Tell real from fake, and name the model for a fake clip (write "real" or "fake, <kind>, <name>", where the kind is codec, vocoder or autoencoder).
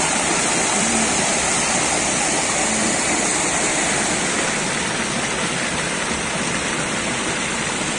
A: real